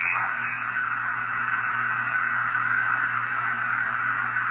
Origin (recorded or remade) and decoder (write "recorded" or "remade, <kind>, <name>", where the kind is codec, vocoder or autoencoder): recorded